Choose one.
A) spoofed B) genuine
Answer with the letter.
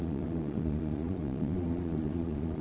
A